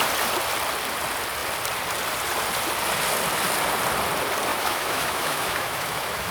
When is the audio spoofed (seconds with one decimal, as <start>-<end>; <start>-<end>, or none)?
4.5-6.3